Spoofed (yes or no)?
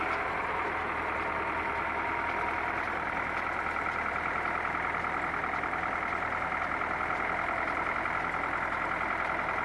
no